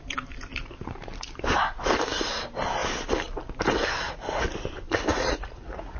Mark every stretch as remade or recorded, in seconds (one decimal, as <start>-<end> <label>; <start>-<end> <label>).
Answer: 0.0-5.1 recorded; 5.1-6.0 remade